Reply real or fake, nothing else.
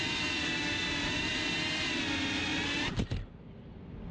real